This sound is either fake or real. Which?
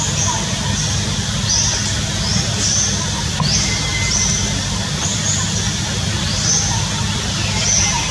real